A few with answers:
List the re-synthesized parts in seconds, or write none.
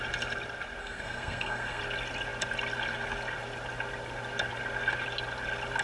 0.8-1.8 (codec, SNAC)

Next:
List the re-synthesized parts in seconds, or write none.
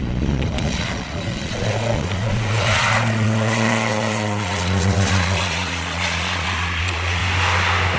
0.0-7.2 (vocoder, Vocos)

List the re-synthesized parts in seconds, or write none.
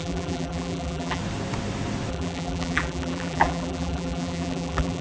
0.0-1.2 (vocoder, BigVGAN v2); 2.1-5.0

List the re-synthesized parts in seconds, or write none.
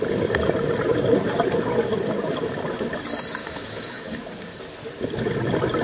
3.4-4.6 (codec, DAC)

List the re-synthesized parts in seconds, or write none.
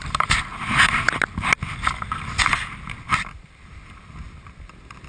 none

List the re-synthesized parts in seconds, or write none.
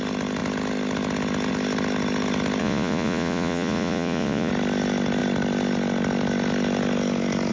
2.6-4.5 (vocoder, Vocos)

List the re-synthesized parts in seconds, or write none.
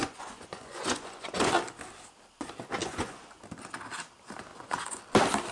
0.0-1.5 (vocoder, Vocos); 2.8-3.4; 4.5-5.0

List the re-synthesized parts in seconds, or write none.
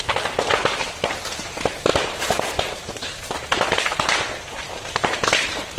1.9-4.8 (vocoder, BigVGAN v2); 5.2-5.8